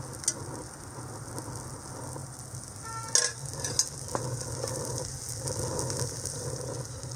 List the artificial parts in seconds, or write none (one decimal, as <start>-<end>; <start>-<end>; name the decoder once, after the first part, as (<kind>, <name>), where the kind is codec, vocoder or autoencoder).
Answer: none